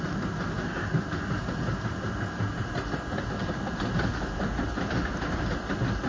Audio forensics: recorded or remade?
recorded